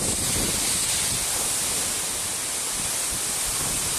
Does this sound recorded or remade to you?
recorded